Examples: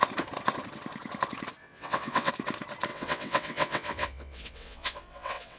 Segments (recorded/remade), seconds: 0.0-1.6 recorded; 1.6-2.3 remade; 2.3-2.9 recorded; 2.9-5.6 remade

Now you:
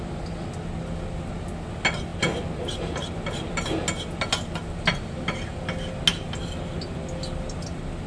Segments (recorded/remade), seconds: 0.0-8.1 recorded